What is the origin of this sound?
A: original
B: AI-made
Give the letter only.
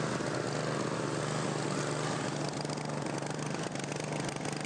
A